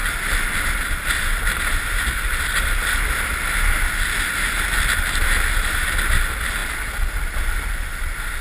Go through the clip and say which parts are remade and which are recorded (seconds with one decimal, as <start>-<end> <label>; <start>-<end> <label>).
0.0-8.4 recorded

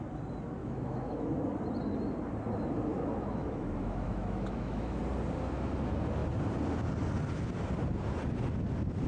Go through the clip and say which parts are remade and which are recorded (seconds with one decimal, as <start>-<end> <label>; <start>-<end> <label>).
0.0-0.6 recorded; 0.6-1.4 remade; 1.4-2.9 recorded; 2.9-5.0 remade; 5.0-9.1 recorded

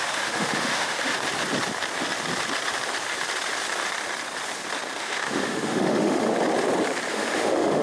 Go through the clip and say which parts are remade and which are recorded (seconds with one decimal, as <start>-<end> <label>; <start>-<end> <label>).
0.0-1.1 remade; 1.1-5.0 recorded; 5.0-6.3 remade; 6.3-7.1 recorded; 7.1-7.8 remade

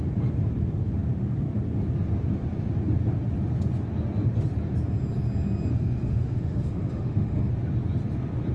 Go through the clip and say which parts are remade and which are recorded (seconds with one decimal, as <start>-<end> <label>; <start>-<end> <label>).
0.0-5.7 recorded; 5.7-7.5 remade; 7.5-8.5 recorded

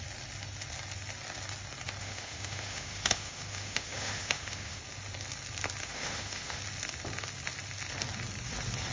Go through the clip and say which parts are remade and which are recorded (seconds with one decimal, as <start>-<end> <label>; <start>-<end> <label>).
0.0-2.0 recorded; 2.0-4.8 remade; 4.8-5.8 recorded; 5.8-6.6 remade; 6.6-8.9 recorded